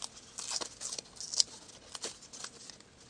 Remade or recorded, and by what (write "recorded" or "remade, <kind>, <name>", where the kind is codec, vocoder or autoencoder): recorded